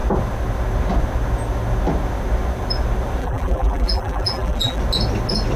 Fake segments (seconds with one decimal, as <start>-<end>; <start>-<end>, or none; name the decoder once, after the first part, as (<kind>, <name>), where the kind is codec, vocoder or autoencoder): 3.2-4.8 (vocoder, BigVGAN v2)